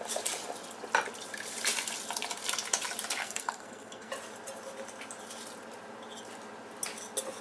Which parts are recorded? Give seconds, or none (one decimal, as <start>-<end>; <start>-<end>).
0.0-3.2; 4.1-7.4